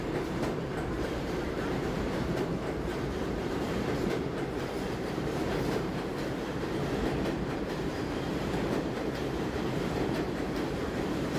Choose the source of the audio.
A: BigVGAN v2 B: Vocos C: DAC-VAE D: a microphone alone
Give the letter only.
A